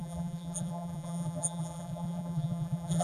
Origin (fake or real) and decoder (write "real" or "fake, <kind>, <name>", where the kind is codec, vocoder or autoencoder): fake, vocoder, BigVGAN v2